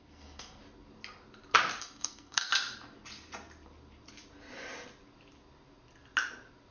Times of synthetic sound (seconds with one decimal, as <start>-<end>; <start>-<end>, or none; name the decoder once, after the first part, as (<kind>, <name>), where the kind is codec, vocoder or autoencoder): 0.0-0.6 (codec, SNAC); 1.8-2.5